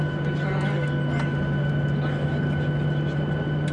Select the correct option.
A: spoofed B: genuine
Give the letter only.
B